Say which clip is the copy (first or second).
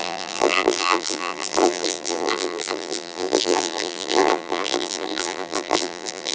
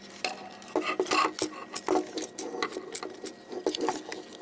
first